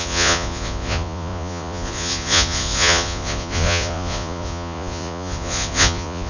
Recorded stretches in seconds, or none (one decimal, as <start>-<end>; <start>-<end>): none